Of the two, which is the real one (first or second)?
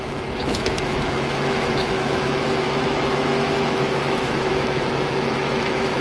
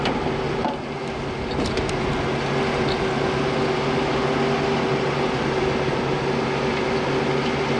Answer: second